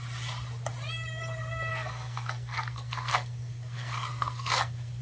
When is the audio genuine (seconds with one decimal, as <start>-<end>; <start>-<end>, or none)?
0.0-1.7